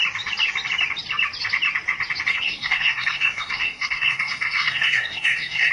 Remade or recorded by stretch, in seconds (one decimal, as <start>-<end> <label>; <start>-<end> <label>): 0.0-2.3 recorded; 2.3-5.7 remade